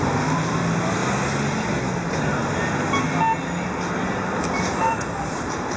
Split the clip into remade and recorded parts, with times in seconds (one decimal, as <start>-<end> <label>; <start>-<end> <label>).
0.0-1.0 remade; 1.0-2.2 recorded; 2.2-2.6 remade; 2.6-4.0 recorded; 4.0-5.8 remade

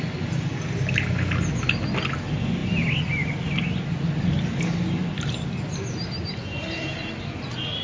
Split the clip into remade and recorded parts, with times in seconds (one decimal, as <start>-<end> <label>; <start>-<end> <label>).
0.0-6.5 recorded; 6.5-7.8 remade

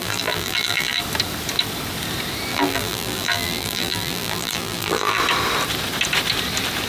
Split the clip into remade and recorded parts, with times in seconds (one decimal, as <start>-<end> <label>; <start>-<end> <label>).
0.0-1.0 remade; 1.0-2.5 recorded; 2.5-5.2 remade; 5.2-6.9 recorded

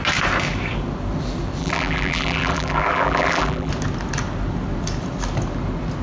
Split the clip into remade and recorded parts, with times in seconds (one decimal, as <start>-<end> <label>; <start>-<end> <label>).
0.0-1.6 recorded; 1.6-3.7 remade; 3.7-6.0 recorded

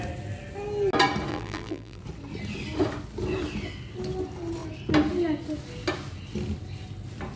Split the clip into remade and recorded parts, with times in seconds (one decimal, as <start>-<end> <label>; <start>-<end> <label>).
0.0-1.3 recorded; 1.3-2.0 remade; 2.0-7.4 recorded

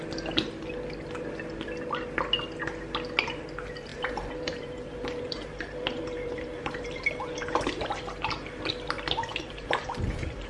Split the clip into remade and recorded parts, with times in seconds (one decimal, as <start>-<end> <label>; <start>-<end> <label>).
0.0-3.9 recorded; 3.9-8.0 remade; 8.0-9.3 recorded; 9.3-10.5 remade